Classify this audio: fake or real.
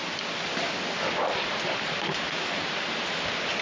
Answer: real